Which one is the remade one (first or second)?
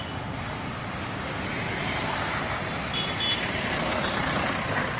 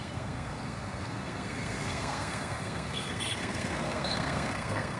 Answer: second